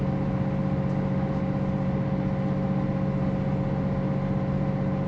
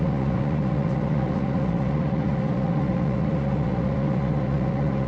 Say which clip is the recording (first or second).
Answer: first